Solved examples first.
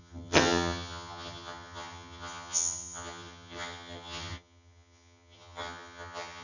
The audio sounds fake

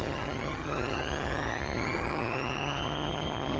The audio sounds fake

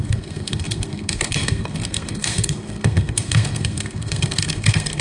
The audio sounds fake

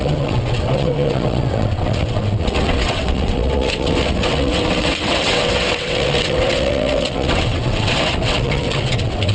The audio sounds fake